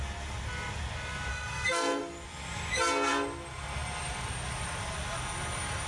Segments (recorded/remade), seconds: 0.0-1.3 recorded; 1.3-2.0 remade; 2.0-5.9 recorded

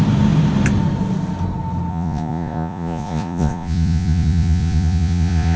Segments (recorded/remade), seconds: 0.0-1.9 recorded; 1.9-5.6 remade